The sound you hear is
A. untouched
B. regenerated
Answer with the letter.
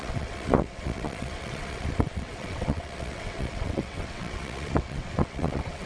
B